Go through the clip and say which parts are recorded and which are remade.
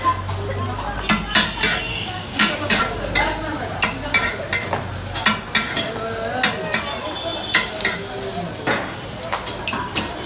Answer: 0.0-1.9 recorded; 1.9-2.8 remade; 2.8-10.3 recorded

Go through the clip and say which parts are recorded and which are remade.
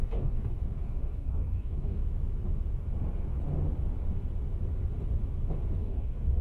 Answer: 0.0-2.0 remade; 2.0-5.8 recorded; 5.8-6.4 remade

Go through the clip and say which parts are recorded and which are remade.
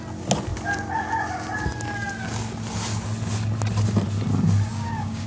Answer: 0.0-4.7 recorded; 4.7-5.3 remade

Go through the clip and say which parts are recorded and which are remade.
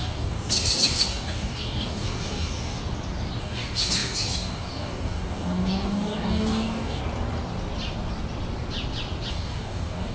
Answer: 0.0-2.8 remade; 2.8-3.4 recorded; 3.4-7.0 remade; 7.0-9.3 recorded; 9.3-10.1 remade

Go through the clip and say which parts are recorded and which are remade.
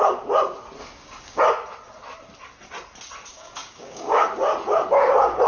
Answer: 0.0-0.8 recorded; 0.8-1.4 remade; 1.4-3.3 recorded; 3.3-4.2 remade; 4.2-5.5 recorded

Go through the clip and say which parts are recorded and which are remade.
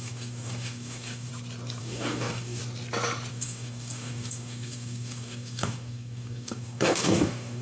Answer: 0.0-1.3 remade; 1.3-1.8 recorded; 1.8-2.6 remade; 2.6-3.3 recorded; 3.3-7.6 remade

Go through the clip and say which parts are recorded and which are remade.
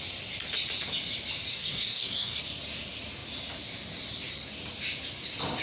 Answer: 0.0-1.5 recorded; 1.5-2.4 remade; 2.4-5.6 recorded